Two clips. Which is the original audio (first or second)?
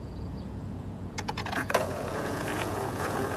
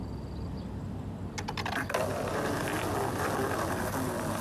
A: second